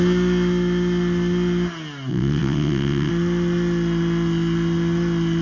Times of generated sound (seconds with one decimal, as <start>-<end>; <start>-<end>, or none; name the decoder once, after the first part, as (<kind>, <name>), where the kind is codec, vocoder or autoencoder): 2.1-3.1 (vocoder, WaveNeXt)